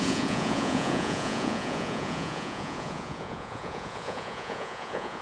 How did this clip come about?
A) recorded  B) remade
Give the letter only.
B